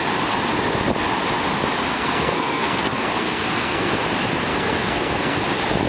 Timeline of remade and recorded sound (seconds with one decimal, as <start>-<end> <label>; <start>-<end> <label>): 0.0-1.9 recorded; 1.9-4.0 remade; 4.0-4.5 recorded; 4.5-5.4 remade; 5.4-5.9 recorded